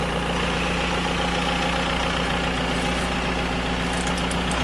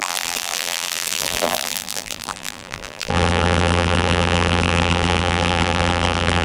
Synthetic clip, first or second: second